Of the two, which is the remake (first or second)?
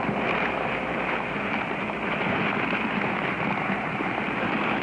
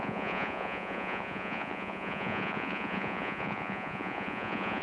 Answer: second